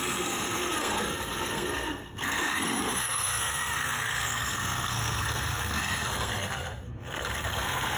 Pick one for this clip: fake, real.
fake